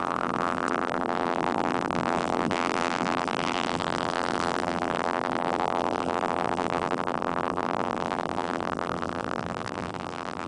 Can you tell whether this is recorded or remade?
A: remade